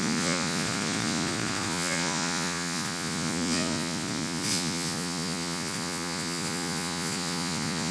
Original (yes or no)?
no